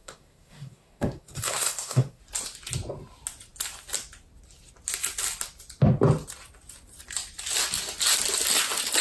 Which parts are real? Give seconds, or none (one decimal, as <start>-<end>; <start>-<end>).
2.2-9.0